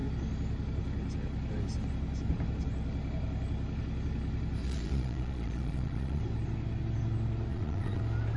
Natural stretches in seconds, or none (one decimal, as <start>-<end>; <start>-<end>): 0.0-4.6; 6.2-7.5; 8.0-8.4